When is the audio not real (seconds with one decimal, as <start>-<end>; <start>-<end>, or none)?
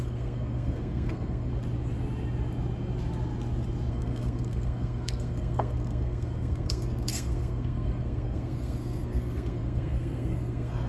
0.0-1.5; 3.9-10.9